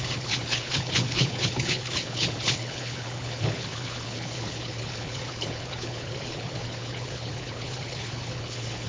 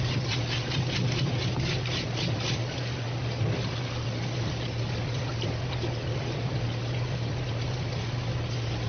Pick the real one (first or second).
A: second